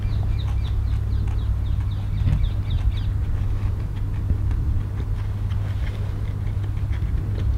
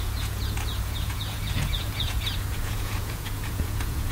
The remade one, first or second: second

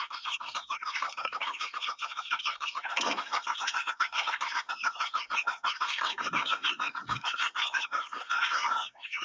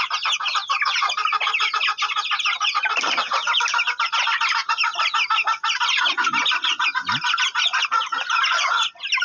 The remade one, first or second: first